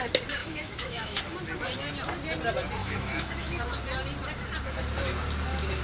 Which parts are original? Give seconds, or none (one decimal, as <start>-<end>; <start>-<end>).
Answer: 0.0-0.4; 1.2-2.8; 3.6-5.8